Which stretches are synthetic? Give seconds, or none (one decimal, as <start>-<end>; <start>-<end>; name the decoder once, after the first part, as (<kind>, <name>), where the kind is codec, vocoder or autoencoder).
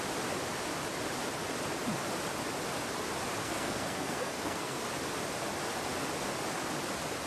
3.4-4.8 (codec, SNAC)